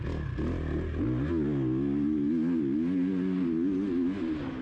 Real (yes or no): yes